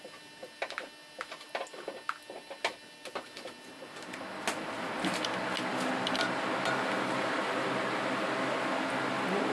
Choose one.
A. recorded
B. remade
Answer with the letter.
A